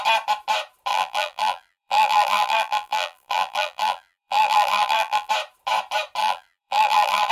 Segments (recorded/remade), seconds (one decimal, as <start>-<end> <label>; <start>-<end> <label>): 0.0-0.9 recorded; 0.9-5.3 remade; 5.3-6.2 recorded; 6.2-7.3 remade

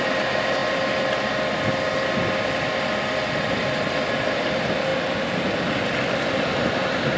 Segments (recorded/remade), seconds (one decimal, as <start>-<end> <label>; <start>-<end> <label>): 0.0-7.2 recorded

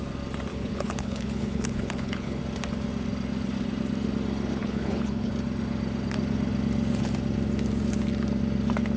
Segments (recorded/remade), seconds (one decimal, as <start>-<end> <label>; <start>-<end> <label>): 0.0-0.5 recorded; 0.5-2.4 remade; 2.4-4.6 recorded; 4.6-5.3 remade; 5.3-9.0 recorded

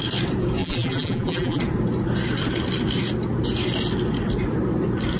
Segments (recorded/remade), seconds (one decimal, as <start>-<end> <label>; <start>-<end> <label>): 0.0-0.6 recorded; 0.6-1.6 remade; 1.6-5.2 recorded

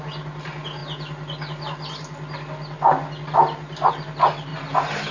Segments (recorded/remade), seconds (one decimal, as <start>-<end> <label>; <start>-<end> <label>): 0.0-5.1 recorded